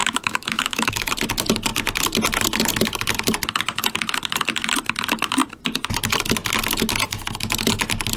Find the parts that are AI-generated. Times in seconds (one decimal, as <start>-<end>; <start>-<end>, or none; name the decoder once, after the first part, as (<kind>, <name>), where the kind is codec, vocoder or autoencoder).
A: 0.0-1.1 (autoencoder, DAC-VAE)